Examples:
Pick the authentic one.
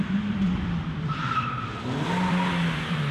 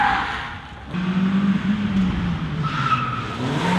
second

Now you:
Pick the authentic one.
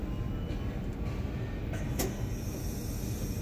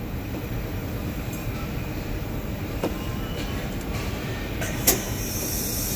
first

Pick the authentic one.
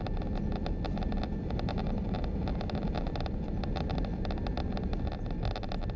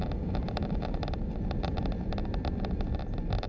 first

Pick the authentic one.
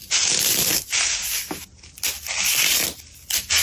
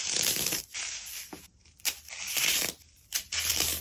first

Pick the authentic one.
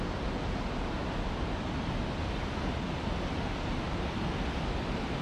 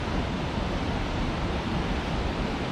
first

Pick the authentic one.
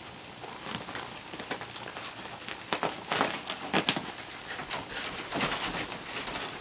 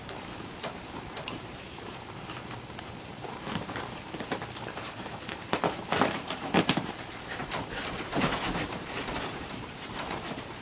first